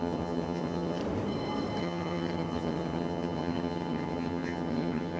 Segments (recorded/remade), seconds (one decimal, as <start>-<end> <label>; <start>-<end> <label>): 0.0-1.0 remade; 1.0-1.8 recorded; 1.8-5.2 remade

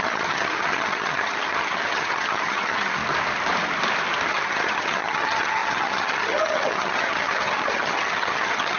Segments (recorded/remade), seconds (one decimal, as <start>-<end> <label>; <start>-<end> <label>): 0.0-3.0 remade; 3.0-4.3 recorded; 4.3-8.8 remade

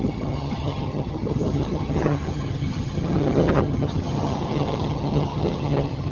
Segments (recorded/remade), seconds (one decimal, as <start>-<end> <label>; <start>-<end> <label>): 0.0-6.1 remade

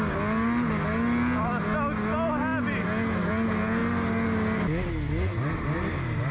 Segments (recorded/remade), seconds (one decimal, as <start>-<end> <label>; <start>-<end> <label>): 0.0-6.3 recorded

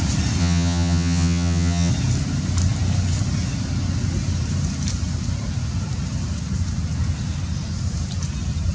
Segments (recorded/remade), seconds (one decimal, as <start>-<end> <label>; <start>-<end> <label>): 0.0-0.4 recorded; 0.4-1.9 remade; 1.9-8.7 recorded

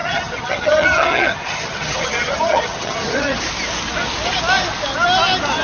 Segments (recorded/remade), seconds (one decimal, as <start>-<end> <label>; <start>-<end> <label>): 0.0-3.4 remade; 3.4-5.6 recorded

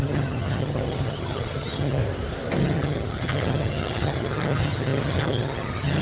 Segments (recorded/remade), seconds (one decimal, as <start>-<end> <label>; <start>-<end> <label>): 0.0-2.0 remade; 2.0-2.6 recorded; 2.6-6.0 remade

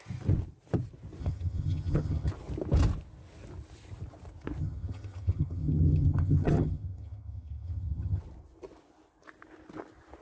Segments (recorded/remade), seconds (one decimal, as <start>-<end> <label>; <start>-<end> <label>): 0.0-1.2 recorded; 1.2-2.3 remade; 2.3-4.6 recorded; 4.6-8.2 remade; 8.2-10.2 recorded